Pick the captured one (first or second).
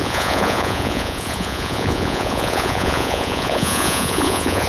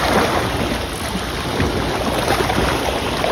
second